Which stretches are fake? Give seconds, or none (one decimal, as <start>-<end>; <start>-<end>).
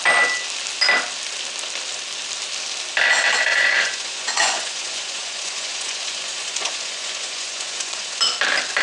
3.5-8.2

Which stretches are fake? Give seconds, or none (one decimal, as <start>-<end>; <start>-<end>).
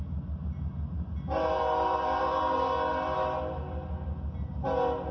none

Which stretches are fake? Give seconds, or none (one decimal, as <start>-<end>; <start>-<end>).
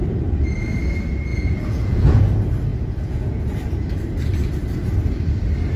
1.3-2.2; 2.7-3.5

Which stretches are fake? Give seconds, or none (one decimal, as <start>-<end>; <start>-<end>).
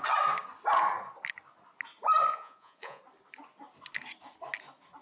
2.3-3.0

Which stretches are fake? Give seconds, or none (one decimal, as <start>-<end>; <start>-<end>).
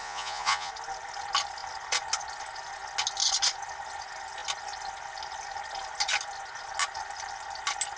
0.0-0.7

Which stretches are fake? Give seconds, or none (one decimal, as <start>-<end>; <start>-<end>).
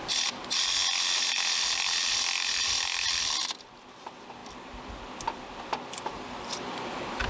none